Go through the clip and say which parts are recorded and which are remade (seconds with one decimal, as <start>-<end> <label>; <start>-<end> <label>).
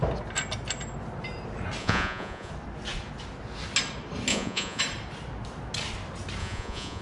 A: 0.0-1.8 recorded; 1.8-2.5 remade; 2.5-4.3 recorded; 4.3-4.8 remade; 4.8-6.4 recorded; 6.4-7.0 remade